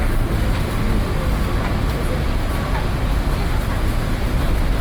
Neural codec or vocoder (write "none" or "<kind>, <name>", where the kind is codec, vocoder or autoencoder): none